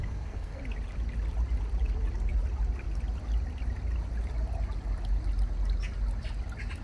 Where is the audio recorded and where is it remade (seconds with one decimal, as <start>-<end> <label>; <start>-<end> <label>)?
0.0-0.6 remade; 0.6-6.8 recorded